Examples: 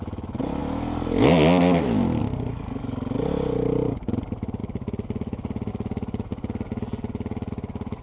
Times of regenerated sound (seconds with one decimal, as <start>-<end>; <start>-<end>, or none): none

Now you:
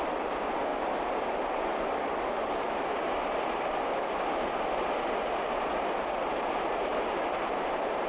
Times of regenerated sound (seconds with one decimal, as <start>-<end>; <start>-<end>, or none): 0.7-3.9; 6.9-7.5

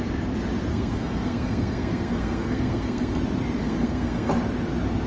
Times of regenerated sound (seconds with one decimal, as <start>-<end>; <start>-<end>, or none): 0.7-3.2; 3.6-4.3